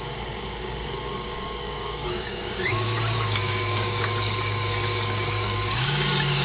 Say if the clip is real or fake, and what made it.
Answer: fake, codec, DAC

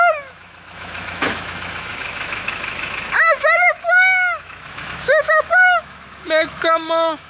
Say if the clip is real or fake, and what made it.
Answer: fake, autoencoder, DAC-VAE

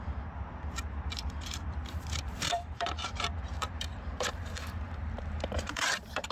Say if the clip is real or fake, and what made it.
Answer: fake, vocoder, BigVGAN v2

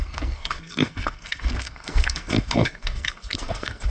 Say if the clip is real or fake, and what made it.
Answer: fake, codec, SNAC